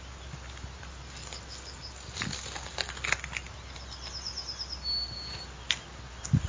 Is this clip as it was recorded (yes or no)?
yes